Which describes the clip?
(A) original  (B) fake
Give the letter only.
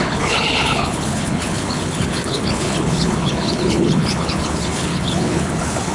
B